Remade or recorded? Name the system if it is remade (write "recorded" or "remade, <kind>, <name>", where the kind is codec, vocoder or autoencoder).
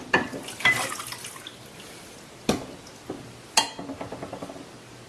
recorded